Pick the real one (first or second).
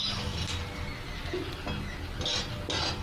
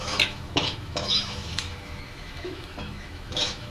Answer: first